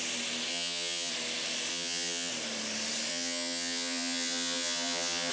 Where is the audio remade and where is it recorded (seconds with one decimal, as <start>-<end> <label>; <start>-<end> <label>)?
0.0-0.5 recorded; 0.5-1.1 remade; 1.1-1.7 recorded; 1.7-2.3 remade; 2.3-3.1 recorded; 3.1-5.3 remade